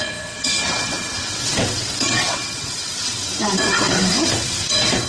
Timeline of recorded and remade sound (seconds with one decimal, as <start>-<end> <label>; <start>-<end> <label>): 0.0-5.1 remade

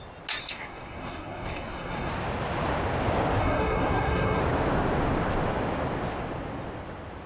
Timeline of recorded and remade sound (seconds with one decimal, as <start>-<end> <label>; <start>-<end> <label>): 0.0-0.4 recorded; 0.4-2.1 remade; 2.1-3.4 recorded; 3.4-4.4 remade; 4.4-7.3 recorded

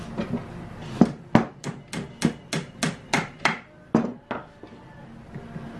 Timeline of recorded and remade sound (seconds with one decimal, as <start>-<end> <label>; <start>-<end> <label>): 0.0-5.8 recorded

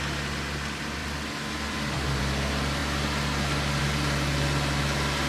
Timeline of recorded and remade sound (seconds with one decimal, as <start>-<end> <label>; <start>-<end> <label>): 0.0-1.0 recorded; 1.0-2.2 remade; 2.2-5.3 recorded

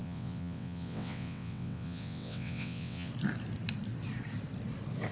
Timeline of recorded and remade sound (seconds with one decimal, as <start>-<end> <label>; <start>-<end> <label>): 0.0-3.1 remade; 3.1-5.1 recorded

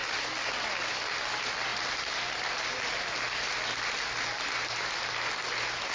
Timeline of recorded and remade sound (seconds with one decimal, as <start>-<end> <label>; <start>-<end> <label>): 0.0-5.9 recorded

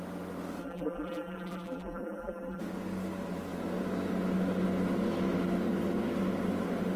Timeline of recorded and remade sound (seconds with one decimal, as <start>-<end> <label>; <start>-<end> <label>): 0.0-0.6 recorded; 0.6-2.6 remade; 2.6-7.0 recorded